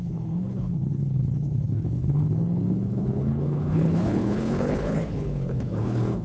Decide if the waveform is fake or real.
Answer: fake